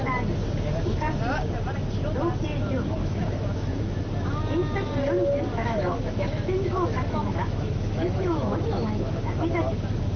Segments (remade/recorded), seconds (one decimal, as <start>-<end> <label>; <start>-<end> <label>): 0.0-3.0 recorded; 3.0-4.0 remade; 4.0-5.5 recorded; 5.5-9.6 remade; 9.6-10.2 recorded